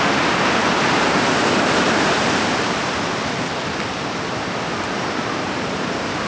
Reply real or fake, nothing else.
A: real